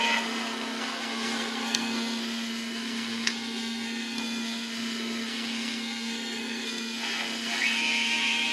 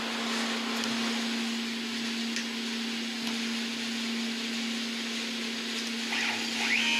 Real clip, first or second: second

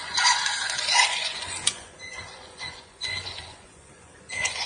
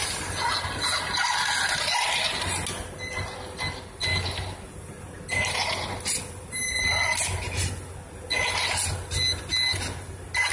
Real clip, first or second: second